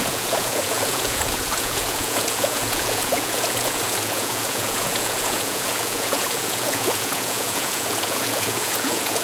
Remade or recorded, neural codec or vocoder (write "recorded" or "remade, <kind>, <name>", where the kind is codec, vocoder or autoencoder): remade, vocoder, Vocos